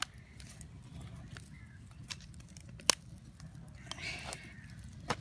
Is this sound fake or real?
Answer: real